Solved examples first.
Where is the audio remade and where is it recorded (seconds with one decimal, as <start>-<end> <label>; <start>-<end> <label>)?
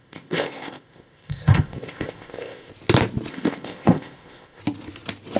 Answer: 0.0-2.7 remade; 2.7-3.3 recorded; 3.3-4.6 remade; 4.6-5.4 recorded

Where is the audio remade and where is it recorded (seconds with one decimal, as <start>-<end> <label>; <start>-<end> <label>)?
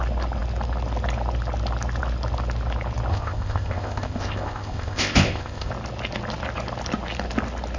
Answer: 0.0-3.1 recorded; 3.1-5.7 remade; 5.7-7.8 recorded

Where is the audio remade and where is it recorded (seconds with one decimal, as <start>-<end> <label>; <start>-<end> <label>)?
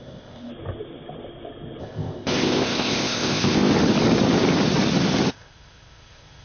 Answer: 0.0-0.5 remade; 0.5-1.8 recorded; 1.8-3.7 remade; 3.7-5.3 recorded; 5.3-6.4 remade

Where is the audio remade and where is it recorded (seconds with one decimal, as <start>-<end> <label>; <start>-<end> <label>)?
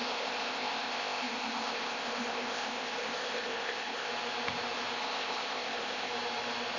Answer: 0.0-4.1 remade; 4.1-5.0 recorded; 5.0-6.1 remade; 6.1-6.8 recorded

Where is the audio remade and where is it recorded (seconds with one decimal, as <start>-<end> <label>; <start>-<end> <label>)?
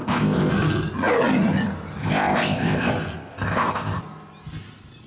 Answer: 0.0-0.5 remade; 0.5-2.0 recorded; 2.0-2.9 remade; 2.9-3.3 recorded; 3.3-4.0 remade; 4.0-5.1 recorded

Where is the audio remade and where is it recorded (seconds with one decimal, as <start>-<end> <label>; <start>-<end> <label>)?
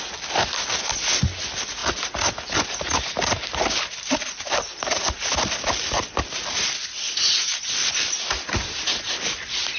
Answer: 0.0-9.8 recorded